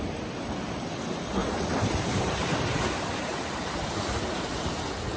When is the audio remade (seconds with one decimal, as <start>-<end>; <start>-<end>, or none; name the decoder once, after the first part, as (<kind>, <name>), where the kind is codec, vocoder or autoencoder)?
1.4-4.5 (vocoder, BigVGAN v2)